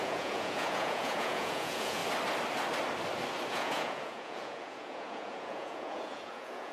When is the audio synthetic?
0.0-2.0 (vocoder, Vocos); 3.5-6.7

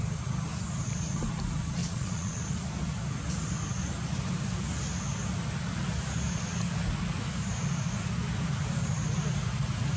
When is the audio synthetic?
1.8-2.4 (vocoder, Vocos)